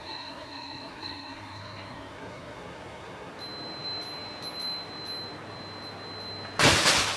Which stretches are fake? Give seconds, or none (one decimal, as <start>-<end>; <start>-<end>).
0.0-3.3